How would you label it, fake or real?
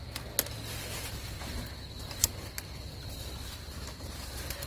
real